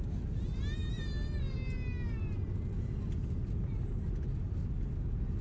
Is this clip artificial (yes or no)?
no